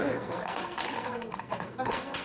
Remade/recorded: remade